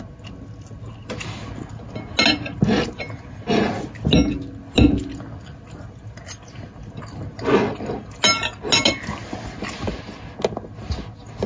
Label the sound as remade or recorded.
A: recorded